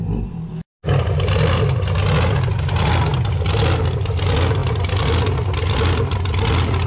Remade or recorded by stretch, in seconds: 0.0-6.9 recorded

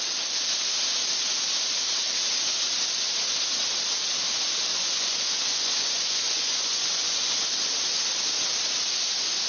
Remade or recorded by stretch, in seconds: 0.0-4.7 recorded; 4.7-7.3 remade; 7.3-9.5 recorded